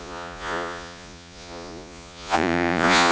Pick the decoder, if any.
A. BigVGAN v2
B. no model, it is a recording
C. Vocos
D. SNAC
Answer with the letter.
C